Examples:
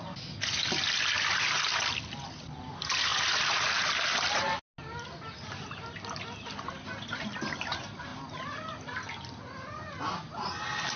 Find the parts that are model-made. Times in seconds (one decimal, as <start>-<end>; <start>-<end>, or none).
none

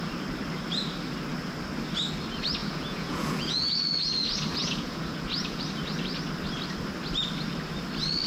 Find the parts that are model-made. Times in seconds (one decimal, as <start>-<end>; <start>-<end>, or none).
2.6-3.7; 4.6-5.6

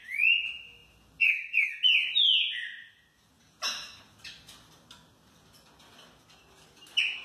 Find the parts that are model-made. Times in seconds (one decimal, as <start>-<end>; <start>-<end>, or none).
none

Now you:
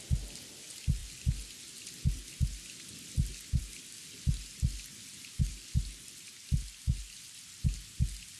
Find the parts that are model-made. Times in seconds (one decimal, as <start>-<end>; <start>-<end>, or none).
none